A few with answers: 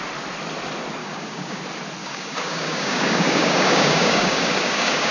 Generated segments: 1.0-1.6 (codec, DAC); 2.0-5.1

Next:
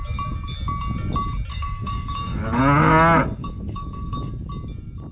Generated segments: 1.5-2.6 (codec, DAC); 3.4-4.3

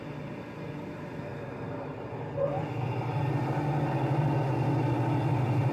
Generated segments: none